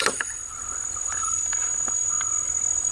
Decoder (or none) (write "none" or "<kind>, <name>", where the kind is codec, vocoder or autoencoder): none